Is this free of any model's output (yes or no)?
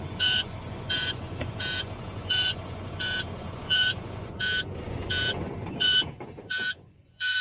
no